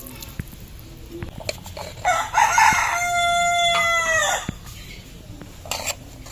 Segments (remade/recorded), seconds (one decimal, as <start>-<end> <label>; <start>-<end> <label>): 0.0-6.3 recorded